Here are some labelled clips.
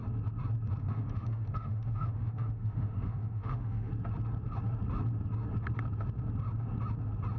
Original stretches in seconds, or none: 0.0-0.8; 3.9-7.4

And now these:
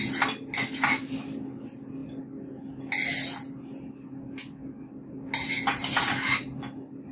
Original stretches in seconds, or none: 0.0-7.1

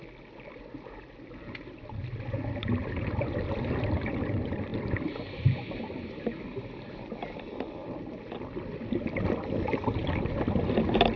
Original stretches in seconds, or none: 2.0-3.2

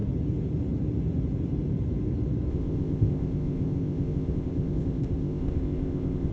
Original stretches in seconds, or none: 0.0-2.5

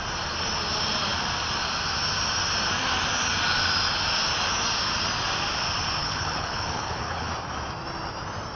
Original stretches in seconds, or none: 0.0-6.0; 7.3-8.6